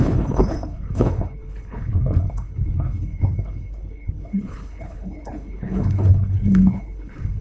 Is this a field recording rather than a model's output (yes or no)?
no